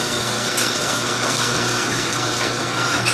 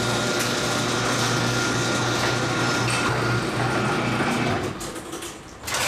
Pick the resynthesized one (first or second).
first